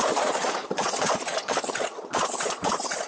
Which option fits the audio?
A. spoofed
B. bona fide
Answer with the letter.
A